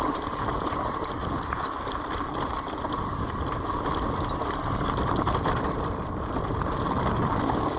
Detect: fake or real real